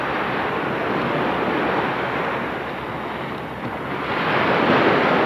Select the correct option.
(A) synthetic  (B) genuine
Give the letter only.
B